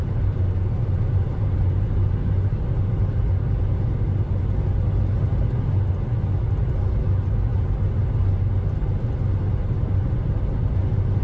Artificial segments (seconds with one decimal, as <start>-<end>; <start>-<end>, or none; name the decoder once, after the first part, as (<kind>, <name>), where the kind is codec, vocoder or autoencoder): 0.0-1.7 (vocoder, BigVGAN v2); 7.5-8.2